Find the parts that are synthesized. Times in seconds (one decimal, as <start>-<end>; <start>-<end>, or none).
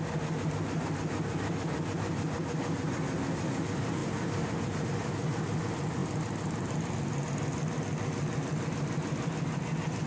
6.0-6.9